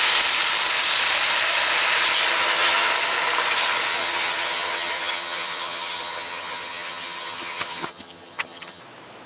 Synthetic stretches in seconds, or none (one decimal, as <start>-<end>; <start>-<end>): 2.4-2.9; 3.9-8.8